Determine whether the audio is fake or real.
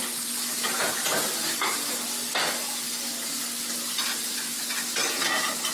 real